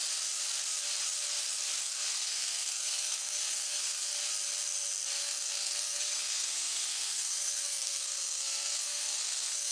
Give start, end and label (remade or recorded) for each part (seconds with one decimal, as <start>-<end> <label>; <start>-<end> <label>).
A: 0.0-1.8 recorded; 1.8-4.1 remade; 4.1-5.2 recorded; 5.2-9.7 remade